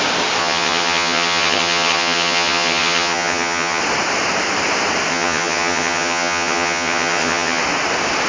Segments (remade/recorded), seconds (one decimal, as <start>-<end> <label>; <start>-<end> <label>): 0.0-0.4 recorded; 0.4-3.8 remade; 3.8-5.1 recorded; 5.1-7.6 remade; 7.6-8.3 recorded